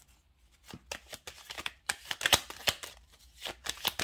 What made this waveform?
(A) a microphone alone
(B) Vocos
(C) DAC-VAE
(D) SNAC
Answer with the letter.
A